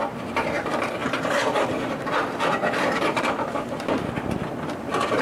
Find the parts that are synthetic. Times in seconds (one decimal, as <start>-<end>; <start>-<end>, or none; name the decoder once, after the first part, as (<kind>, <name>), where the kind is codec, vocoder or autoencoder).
0.0-5.2 (vocoder, BigVGAN v2)